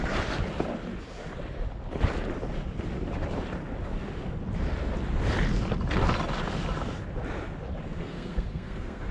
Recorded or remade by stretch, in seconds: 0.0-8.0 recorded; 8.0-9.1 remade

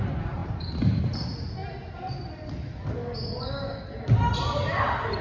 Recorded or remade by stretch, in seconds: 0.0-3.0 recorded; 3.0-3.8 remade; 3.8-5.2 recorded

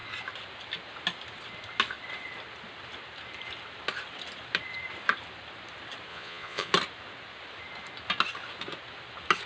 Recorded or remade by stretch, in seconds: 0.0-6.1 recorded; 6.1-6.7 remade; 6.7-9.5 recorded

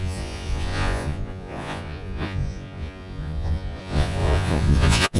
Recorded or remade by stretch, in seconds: 0.0-5.2 remade

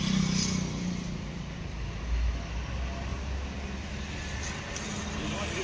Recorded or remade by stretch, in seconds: 0.0-5.6 recorded

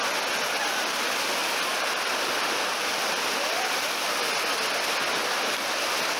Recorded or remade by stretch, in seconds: 0.0-6.2 recorded

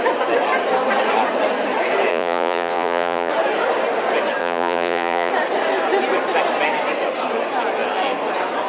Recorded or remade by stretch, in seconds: 0.0-2.1 recorded; 2.1-3.3 remade; 3.3-4.4 recorded; 4.4-5.3 remade; 5.3-8.7 recorded